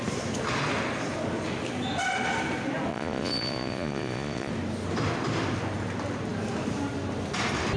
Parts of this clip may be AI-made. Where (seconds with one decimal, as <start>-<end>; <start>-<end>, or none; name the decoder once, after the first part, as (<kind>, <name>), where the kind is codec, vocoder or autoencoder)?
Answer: 2.9-4.5 (vocoder, Vocos)